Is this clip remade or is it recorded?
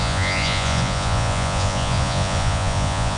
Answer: remade